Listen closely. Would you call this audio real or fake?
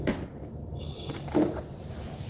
fake